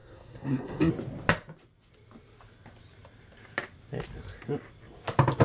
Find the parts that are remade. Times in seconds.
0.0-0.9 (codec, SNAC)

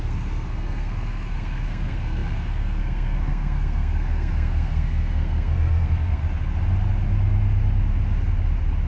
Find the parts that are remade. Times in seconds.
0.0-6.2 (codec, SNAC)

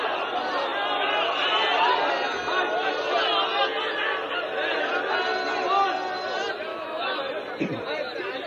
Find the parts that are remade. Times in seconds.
6.7-7.2 (autoencoder, DAC-VAE)

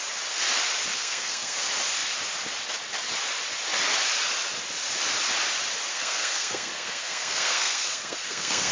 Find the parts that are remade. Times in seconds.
0.9-1.6 (codec, SNAC); 5.9-8.7

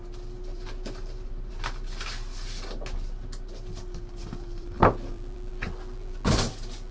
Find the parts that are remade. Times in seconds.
0.5-1.9 (vocoder, BigVGAN v2); 4.2-5.5